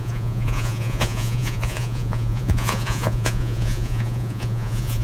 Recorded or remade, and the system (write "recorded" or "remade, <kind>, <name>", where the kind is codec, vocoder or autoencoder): remade, vocoder, Vocos